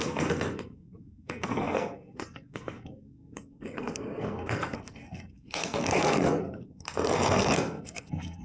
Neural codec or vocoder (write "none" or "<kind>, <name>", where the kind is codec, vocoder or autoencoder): codec, SNAC